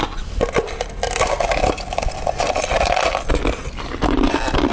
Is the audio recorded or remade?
recorded